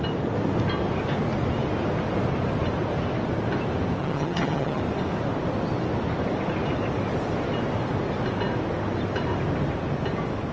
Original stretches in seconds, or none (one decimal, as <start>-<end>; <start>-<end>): 0.0-4.0; 4.8-10.5

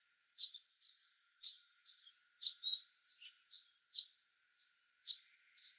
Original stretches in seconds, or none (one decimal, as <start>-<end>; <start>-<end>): 0.0-0.7; 2.1-5.8

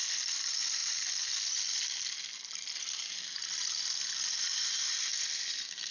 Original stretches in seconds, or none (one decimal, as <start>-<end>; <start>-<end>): 0.0-5.9

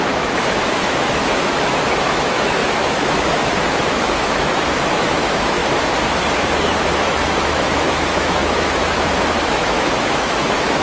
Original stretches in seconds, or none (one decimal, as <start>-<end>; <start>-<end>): 5.6-6.8

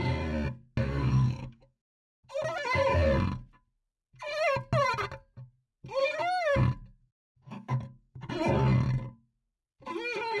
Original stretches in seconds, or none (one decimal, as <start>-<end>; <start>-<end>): 0.0-0.8; 2.3-7.0; 8.3-10.4

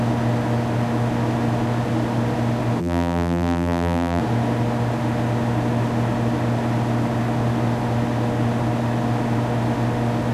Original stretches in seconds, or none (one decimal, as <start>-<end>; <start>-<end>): 0.0-2.8; 4.2-10.3